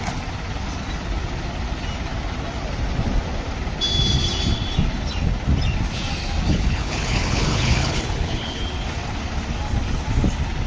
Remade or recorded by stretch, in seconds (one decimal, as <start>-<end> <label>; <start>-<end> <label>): 0.0-6.5 recorded; 6.5-8.6 remade; 8.6-10.7 recorded